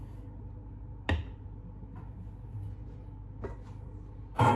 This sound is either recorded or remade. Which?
recorded